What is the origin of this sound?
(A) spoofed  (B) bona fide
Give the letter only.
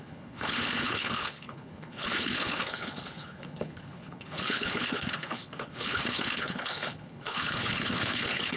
A